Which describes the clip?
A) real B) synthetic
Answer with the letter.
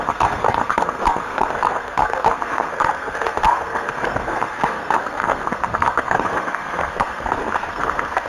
B